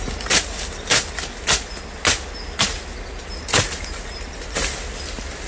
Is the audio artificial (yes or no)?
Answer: no